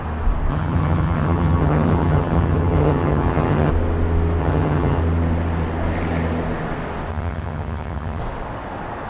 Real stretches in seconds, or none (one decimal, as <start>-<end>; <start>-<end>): 0.0-0.5; 3.7-4.4; 5.0-7.1; 8.2-9.1